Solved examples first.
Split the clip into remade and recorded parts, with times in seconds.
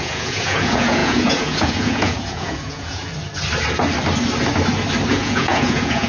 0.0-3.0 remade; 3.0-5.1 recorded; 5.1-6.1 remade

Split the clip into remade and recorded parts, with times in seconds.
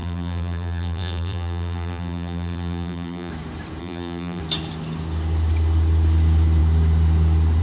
0.0-3.3 remade; 3.3-3.8 recorded; 3.8-4.4 remade; 4.4-7.6 recorded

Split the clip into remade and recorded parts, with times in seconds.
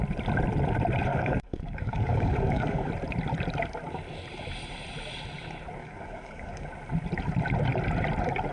0.0-1.1 recorded; 1.1-2.9 remade; 2.9-5.8 recorded; 5.8-6.7 remade; 6.7-8.5 recorded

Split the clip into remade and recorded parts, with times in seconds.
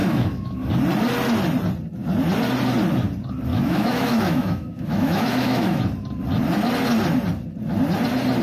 0.0-0.7 remade; 0.7-3.5 recorded; 3.5-5.8 remade; 5.8-8.4 recorded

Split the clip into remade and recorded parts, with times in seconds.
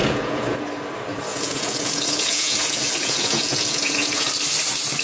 0.0-0.6 remade; 0.6-1.3 recorded; 1.3-4.3 remade; 4.3-5.0 recorded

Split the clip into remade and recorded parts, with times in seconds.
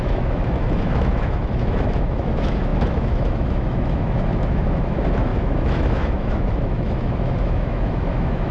0.0-8.5 remade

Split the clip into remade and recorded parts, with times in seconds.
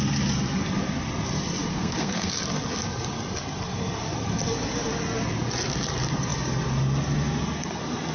0.0-1.7 recorded; 1.7-2.3 remade; 2.3-8.1 recorded